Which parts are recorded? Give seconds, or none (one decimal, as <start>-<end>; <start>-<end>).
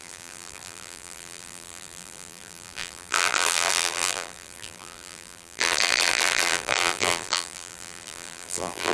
none